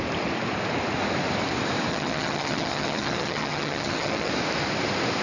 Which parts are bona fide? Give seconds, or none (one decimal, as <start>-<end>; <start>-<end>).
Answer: 0.0-1.9; 4.3-5.2

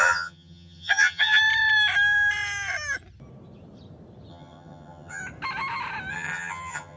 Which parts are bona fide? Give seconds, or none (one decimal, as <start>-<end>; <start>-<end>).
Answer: 1.4-4.3; 5.2-6.1

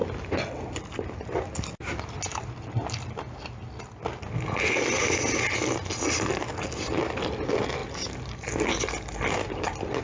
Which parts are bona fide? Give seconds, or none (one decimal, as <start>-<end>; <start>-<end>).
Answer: 0.0-10.0

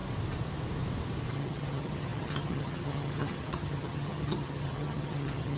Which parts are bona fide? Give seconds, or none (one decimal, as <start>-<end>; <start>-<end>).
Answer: 0.0-1.3

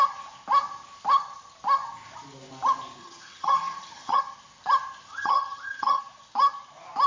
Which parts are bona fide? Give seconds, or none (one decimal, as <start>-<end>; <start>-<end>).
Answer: 0.0-3.0; 4.2-5.1; 6.0-7.1

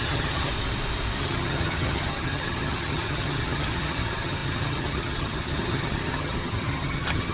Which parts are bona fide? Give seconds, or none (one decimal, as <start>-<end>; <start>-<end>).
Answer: 0.5-1.2